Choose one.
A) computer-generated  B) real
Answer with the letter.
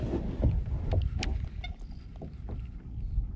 B